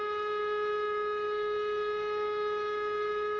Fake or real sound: real